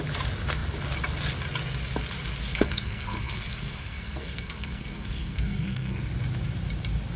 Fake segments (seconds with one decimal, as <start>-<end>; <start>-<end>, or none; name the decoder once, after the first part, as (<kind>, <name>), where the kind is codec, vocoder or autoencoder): 2.5-6.0 (codec, SNAC)